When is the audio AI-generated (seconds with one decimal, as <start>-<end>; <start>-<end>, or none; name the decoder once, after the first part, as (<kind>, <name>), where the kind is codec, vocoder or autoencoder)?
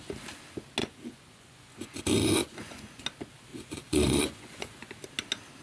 0.8-2.0 (vocoder, Vocos); 2.4-3.0; 3.5-4.9